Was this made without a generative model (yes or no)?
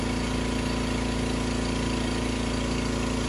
yes